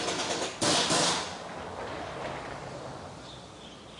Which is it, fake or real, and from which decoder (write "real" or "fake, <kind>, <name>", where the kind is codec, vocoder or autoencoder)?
real